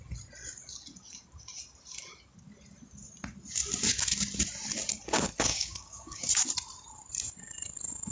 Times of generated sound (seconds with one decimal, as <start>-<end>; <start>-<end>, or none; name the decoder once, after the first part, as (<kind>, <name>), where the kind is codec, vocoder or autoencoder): 5.5-6.3 (codec, DAC)